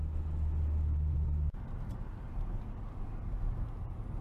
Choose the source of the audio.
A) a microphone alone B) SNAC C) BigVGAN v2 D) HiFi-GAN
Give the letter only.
A